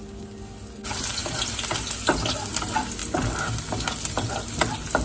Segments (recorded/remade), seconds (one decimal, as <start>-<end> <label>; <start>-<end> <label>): 0.0-5.0 recorded